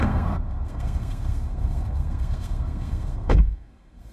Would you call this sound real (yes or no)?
no